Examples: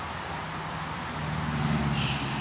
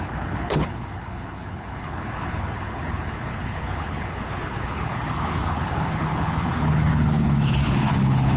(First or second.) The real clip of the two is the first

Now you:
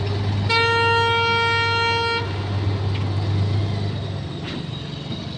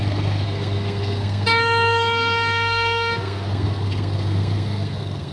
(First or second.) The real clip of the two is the first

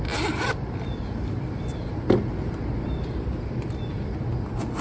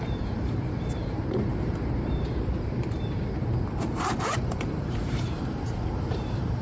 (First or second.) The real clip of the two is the first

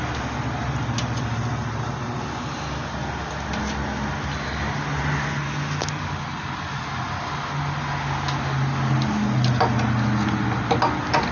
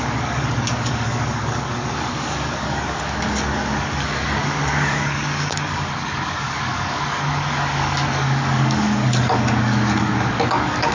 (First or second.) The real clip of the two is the first